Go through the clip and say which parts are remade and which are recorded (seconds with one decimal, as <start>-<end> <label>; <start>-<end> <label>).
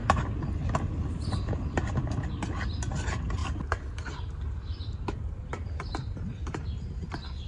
0.0-7.5 recorded